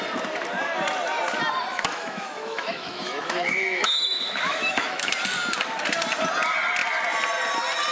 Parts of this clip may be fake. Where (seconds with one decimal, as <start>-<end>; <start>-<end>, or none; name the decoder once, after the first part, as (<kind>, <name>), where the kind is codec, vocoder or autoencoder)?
1.7-5.1 (autoencoder, DAC-VAE)